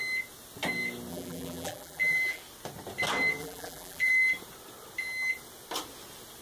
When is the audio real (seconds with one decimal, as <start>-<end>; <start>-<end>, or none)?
0.0-1.1; 2.4-3.4; 4.1-6.4